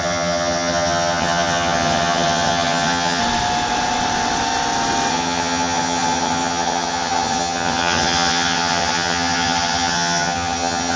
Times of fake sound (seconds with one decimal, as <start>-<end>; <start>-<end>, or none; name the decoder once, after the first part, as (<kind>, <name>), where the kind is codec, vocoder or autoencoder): 0.0-3.2 (vocoder, HiFi-GAN); 5.1-11.0